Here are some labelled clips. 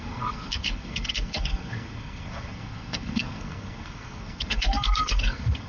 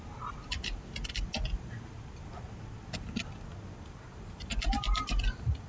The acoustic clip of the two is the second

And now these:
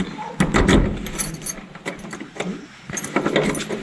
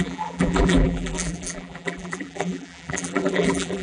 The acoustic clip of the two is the first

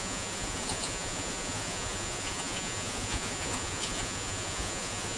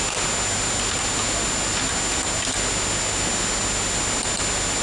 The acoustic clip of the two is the second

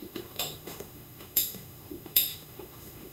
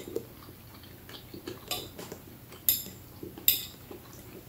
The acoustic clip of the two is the second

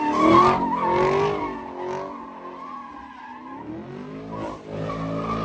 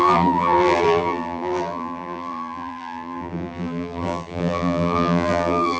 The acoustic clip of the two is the first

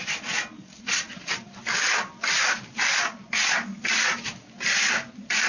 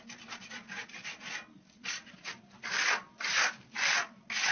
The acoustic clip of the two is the second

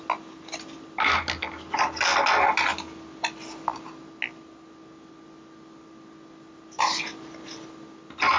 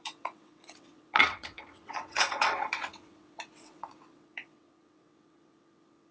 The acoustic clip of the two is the first